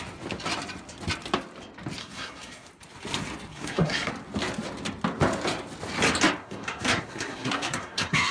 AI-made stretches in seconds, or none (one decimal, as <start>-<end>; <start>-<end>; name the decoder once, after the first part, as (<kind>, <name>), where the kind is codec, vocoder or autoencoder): 2.0-2.7 (codec, SNAC); 3.5-4.1; 6.4-8.3